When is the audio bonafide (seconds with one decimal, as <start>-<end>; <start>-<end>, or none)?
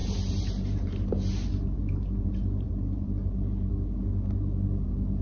1.1-1.8; 3.7-5.2